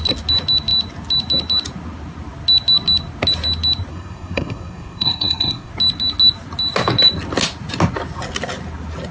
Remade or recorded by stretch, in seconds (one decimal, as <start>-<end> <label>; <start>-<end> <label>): 0.0-3.9 recorded; 3.9-5.7 remade; 5.7-9.1 recorded